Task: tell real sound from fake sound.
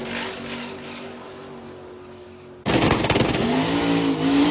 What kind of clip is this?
real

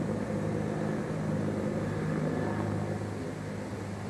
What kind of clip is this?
real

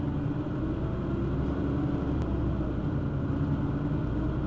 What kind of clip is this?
real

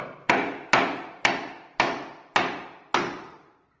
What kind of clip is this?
real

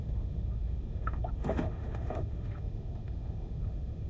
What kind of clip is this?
fake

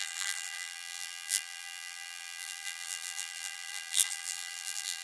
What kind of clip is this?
fake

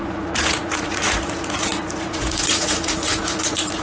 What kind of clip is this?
fake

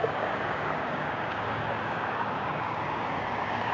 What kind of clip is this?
fake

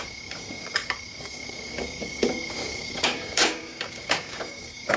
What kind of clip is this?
fake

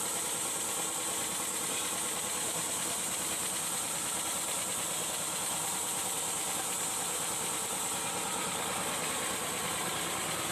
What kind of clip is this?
real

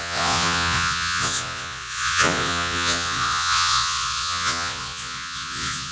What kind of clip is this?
fake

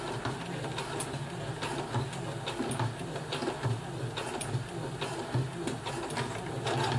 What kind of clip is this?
real